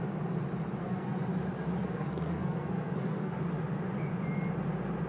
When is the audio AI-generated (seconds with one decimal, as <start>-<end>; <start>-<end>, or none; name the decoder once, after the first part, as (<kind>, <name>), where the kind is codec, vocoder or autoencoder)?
0.8-1.3 (codec, SNAC); 1.8-3.3